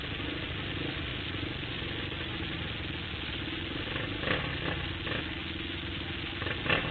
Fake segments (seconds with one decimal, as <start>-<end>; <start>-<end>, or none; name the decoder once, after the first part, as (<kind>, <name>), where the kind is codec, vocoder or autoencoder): none